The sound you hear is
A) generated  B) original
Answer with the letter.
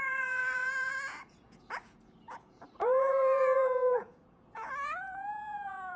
A